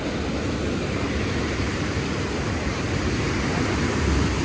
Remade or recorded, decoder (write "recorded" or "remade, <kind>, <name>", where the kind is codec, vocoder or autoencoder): recorded